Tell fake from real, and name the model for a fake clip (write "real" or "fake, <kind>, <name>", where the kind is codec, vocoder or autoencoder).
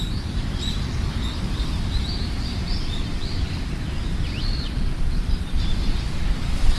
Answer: fake, vocoder, BigVGAN v2